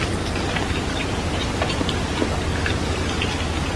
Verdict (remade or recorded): recorded